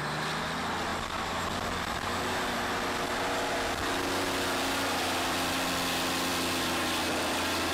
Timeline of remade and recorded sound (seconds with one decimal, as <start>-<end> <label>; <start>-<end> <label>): 0.0-0.9 recorded; 0.9-1.5 remade; 1.5-7.7 recorded